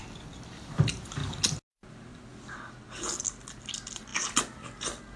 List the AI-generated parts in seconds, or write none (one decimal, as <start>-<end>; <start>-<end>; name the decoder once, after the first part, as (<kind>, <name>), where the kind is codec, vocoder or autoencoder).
none